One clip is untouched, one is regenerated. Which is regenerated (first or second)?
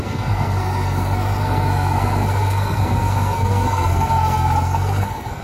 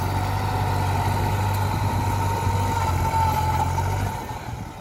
first